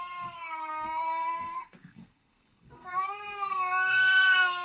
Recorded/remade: remade